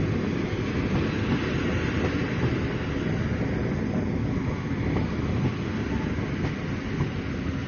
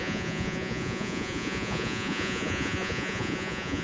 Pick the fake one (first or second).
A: second